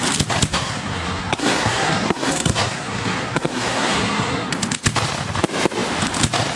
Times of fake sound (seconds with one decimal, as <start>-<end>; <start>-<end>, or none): 0.5-4.5